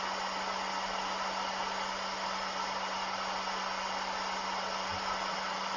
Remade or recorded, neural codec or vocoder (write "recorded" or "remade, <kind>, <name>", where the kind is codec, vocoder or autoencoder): recorded